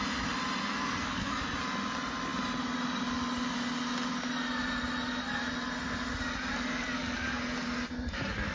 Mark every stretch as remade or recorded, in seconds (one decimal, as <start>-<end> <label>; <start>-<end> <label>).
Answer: 0.0-0.6 recorded; 0.6-1.4 remade; 1.4-8.5 recorded